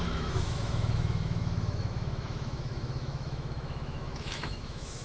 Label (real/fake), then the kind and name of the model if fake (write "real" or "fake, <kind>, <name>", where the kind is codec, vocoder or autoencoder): fake, autoencoder, DAC-VAE